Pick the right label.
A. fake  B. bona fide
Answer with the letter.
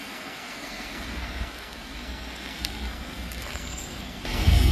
A